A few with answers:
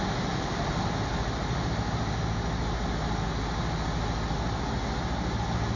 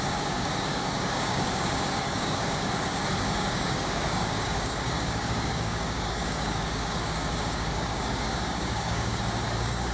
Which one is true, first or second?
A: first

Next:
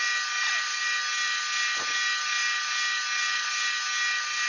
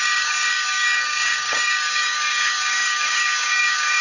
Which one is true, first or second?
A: first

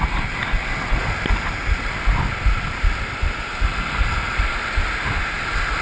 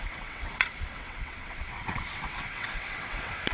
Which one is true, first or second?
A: first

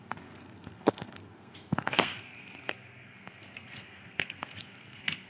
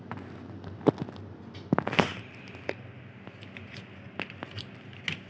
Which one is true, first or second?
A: second